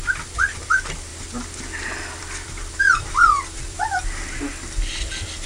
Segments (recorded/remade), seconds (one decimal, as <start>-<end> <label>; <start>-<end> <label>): 0.0-1.1 remade; 1.1-2.2 recorded; 2.2-3.9 remade; 3.9-5.5 recorded